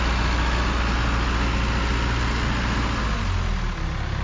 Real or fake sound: real